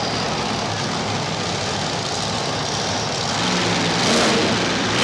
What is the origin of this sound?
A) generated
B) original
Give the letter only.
B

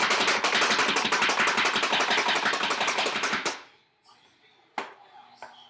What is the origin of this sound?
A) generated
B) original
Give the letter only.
B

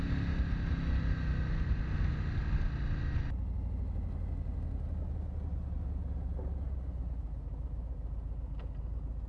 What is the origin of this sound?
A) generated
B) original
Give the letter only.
B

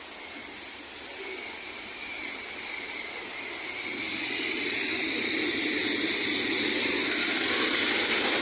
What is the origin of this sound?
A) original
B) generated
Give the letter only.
A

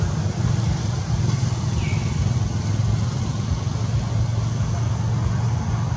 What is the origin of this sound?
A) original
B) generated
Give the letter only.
A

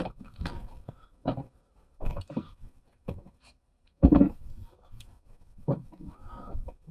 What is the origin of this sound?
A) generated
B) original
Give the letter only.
A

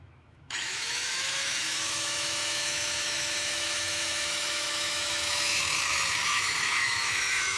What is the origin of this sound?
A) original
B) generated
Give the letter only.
B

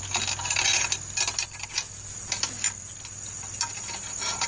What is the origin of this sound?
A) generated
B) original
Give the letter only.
B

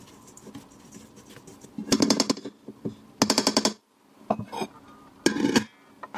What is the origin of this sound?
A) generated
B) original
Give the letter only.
B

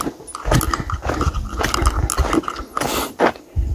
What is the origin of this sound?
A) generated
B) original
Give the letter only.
B